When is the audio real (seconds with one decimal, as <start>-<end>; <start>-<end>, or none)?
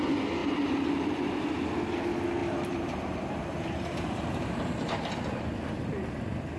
0.0-2.4; 5.3-6.6